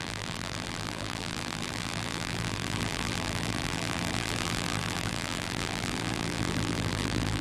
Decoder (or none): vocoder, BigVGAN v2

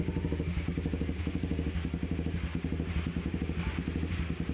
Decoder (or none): none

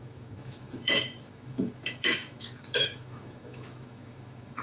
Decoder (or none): autoencoder, DAC-VAE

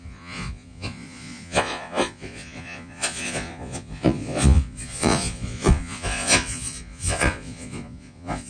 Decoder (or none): vocoder, Vocos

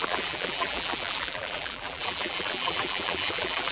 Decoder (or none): vocoder, BigVGAN v2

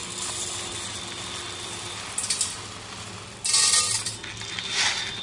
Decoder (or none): none